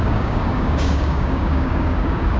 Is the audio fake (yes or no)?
yes